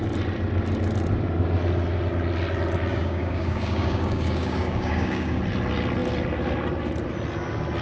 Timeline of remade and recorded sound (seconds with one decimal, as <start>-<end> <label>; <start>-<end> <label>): 0.0-2.9 recorded; 2.9-5.4 remade; 5.4-7.8 recorded